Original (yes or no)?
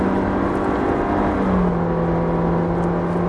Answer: yes